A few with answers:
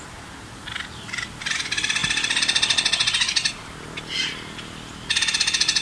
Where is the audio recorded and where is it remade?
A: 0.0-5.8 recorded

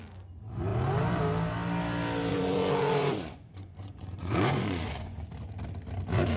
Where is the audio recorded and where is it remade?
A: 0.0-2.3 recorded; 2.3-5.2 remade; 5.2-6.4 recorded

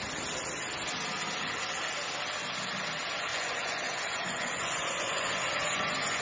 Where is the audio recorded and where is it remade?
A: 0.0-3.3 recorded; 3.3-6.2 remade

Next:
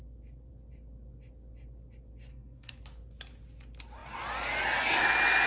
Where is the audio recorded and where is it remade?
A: 0.0-2.3 recorded; 2.3-2.8 remade; 2.8-5.5 recorded

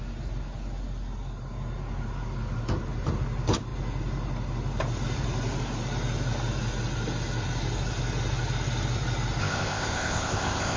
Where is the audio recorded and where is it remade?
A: 0.0-9.4 recorded; 9.4-10.8 remade

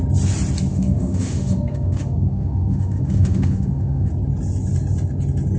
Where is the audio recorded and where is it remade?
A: 0.0-0.7 recorded; 0.7-4.1 remade; 4.1-5.6 recorded